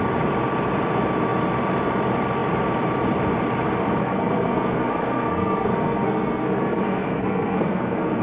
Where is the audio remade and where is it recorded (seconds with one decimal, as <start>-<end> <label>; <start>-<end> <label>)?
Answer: 0.0-4.0 recorded; 4.0-8.2 remade